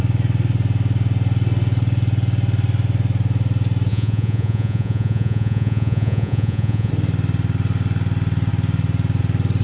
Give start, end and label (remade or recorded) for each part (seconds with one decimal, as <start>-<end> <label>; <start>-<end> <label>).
0.0-3.9 recorded; 3.9-6.9 remade; 6.9-9.6 recorded

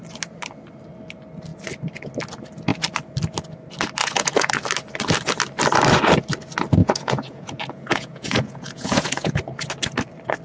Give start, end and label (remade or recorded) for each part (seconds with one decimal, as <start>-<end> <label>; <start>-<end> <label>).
0.0-4.0 recorded; 4.0-4.5 remade; 4.5-6.8 recorded; 6.8-9.3 remade; 9.3-10.4 recorded

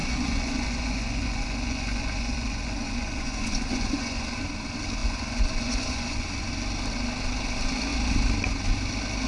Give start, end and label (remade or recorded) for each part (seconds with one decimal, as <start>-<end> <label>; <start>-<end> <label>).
0.0-4.4 remade; 4.4-5.0 recorded; 5.0-6.5 remade; 6.5-9.3 recorded

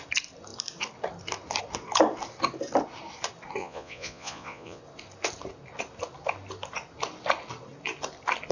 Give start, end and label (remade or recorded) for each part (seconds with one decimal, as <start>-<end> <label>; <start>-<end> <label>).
0.0-3.6 recorded; 3.6-4.8 remade; 4.8-8.5 recorded

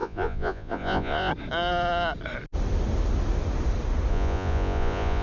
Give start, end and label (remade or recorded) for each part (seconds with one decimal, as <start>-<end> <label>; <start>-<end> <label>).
0.0-1.3 remade; 1.3-4.1 recorded; 4.1-5.2 remade

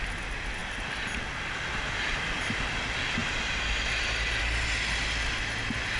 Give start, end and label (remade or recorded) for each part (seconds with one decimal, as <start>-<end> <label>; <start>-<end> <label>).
0.0-6.0 recorded